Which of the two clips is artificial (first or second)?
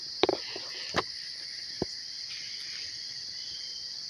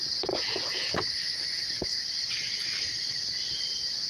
first